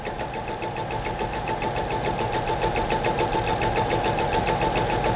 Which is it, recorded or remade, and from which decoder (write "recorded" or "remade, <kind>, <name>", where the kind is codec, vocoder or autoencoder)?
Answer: recorded